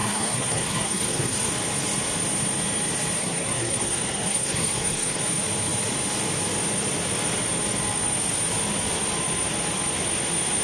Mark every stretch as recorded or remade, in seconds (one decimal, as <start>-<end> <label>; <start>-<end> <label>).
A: 0.0-1.5 remade; 1.5-3.2 recorded; 3.2-5.2 remade; 5.2-10.6 recorded